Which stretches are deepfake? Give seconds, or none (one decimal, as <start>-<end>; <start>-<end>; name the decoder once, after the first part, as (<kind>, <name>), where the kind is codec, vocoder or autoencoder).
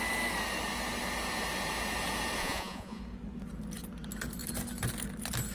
2.4-3.0 (vocoder, Vocos)